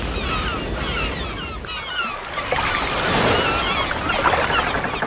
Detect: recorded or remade recorded